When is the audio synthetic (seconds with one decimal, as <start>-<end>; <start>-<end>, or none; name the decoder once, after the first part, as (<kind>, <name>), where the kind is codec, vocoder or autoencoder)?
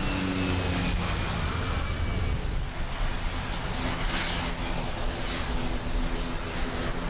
none